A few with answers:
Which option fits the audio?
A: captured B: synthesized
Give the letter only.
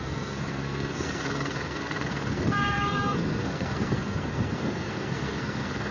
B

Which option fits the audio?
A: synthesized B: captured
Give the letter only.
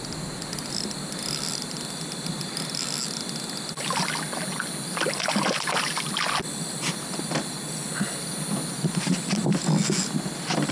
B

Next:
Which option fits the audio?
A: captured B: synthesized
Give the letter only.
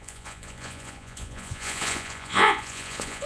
B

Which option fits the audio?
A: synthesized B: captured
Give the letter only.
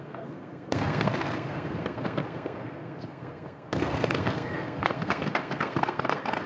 A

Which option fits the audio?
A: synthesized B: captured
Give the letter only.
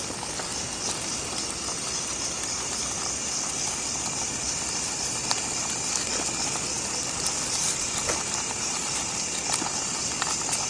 B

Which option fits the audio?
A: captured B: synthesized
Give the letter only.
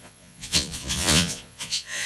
B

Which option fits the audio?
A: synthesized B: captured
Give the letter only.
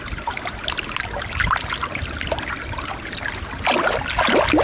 B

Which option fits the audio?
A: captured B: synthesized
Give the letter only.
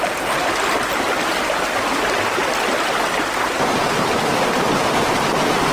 A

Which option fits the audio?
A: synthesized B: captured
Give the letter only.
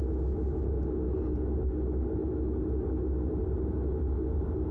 B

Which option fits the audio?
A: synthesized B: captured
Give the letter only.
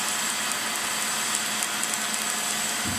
B